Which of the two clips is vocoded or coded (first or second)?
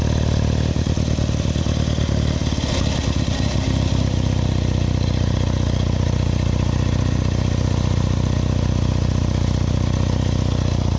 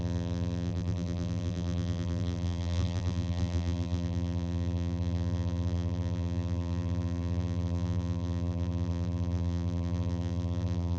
second